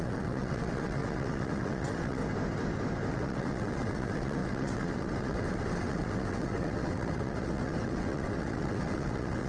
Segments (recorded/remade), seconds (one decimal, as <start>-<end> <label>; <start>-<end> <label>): 0.0-2.2 remade; 2.2-3.1 recorded; 3.1-9.5 remade